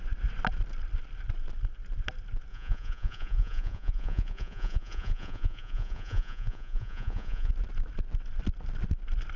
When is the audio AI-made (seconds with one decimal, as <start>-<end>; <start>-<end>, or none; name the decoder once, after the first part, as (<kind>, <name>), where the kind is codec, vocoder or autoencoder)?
2.5-7.5 (vocoder, Vocos)